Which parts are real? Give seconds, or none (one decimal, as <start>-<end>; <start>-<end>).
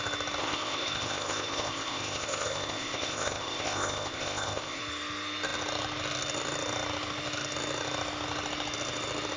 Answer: 0.0-0.4; 4.8-9.4